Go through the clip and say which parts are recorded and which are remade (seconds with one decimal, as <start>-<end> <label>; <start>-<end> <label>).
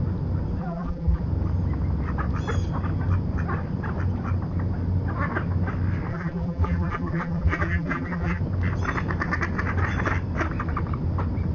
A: 0.0-0.6 recorded; 0.6-1.2 remade; 1.2-6.1 recorded; 6.1-8.4 remade; 8.4-11.5 recorded